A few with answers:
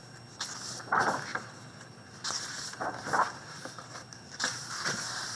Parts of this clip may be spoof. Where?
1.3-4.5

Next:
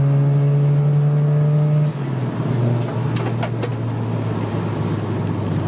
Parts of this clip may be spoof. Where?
none

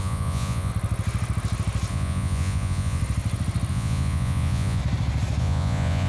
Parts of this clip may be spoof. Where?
0.0-0.7; 1.9-3.0; 3.7-4.8; 5.4-6.1

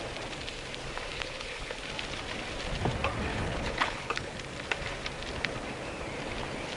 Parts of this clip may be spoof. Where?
1.1-1.8; 3.3-4.3

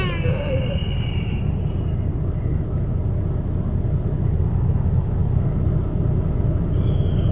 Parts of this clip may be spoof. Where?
0.8-1.4

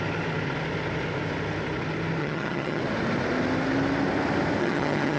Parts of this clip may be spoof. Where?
2.2-2.8; 4.6-5.2